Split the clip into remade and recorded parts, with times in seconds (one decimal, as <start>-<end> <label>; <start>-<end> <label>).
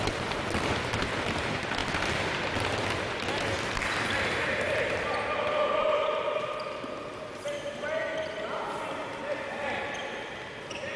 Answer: 0.0-11.0 recorded